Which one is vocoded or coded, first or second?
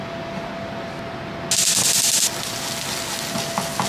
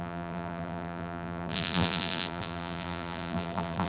second